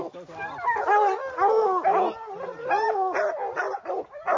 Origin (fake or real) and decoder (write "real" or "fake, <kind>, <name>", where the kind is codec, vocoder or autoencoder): real